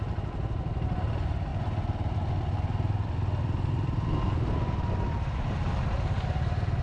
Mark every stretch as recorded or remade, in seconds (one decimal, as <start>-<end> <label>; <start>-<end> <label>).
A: 0.0-6.8 recorded